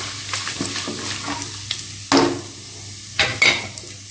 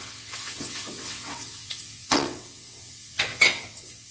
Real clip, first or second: first